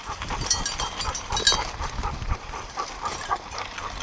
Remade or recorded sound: recorded